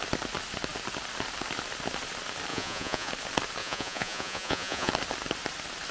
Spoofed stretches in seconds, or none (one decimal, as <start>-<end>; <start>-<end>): 2.5-3.1; 3.6-4.9